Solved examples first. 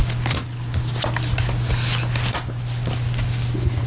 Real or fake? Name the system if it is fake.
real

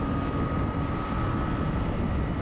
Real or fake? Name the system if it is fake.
real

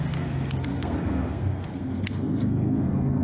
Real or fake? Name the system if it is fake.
fake, codec, SNAC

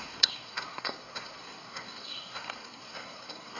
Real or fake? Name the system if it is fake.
fake, codec, SNAC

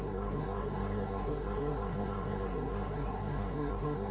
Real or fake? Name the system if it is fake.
fake, codec, SNAC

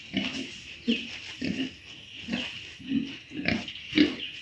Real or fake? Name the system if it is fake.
real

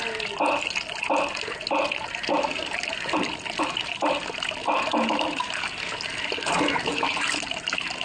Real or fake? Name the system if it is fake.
real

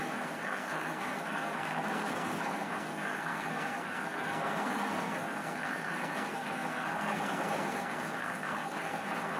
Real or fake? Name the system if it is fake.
fake, codec, SNAC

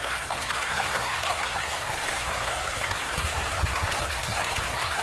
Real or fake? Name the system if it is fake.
fake, codec, SNAC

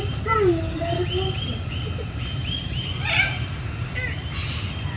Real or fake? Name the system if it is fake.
real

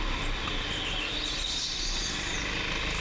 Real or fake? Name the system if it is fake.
real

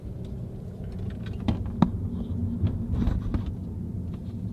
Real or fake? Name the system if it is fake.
real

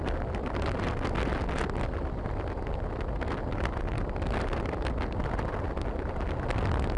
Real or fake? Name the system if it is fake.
real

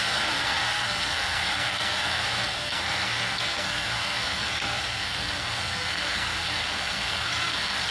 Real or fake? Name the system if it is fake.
fake, codec, SNAC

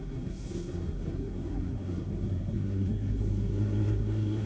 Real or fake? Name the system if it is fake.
fake, codec, SNAC